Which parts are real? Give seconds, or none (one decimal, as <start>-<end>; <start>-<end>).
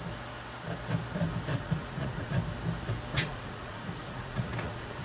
0.0-1.5; 2.3-3.1